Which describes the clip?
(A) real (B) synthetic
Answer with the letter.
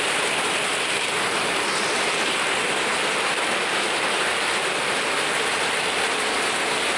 A